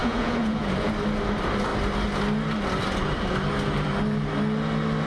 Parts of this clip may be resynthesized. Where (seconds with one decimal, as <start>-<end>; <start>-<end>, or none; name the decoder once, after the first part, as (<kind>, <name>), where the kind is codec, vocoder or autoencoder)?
0.0-0.9 (vocoder, Vocos)